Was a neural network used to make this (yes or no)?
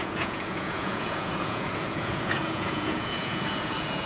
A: yes